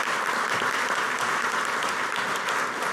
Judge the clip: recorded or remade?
recorded